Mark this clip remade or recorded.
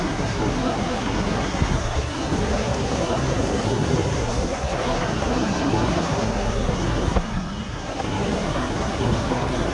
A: remade